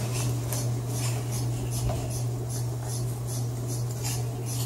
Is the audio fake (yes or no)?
no